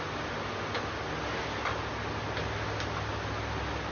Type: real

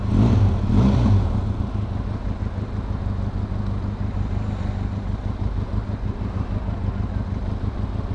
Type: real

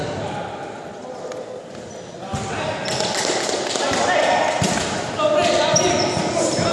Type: real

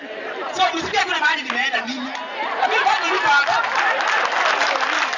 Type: real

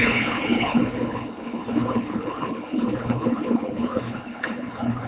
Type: fake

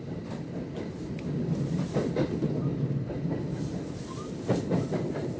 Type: real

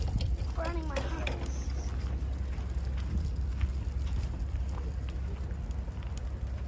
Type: real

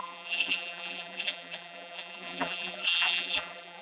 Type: fake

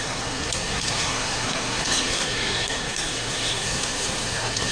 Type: fake